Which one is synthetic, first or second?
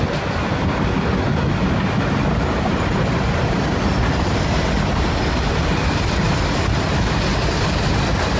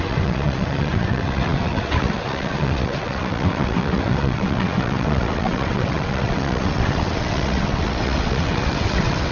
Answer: second